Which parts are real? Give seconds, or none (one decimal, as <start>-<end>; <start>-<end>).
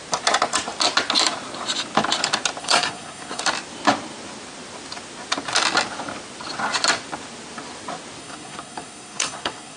0.0-2.6; 3.4-8.2